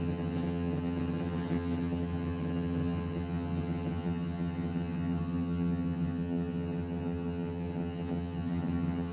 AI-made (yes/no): yes